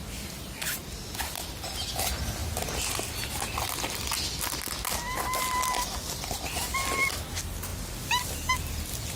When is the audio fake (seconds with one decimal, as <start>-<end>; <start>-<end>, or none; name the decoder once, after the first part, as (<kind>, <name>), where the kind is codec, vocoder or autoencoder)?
none